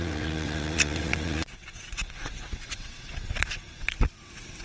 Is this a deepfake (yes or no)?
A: yes